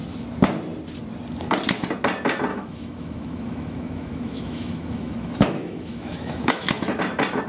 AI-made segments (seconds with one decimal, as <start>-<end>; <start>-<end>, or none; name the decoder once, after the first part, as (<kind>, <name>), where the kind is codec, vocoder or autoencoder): 2.5-7.0 (autoencoder, DAC-VAE)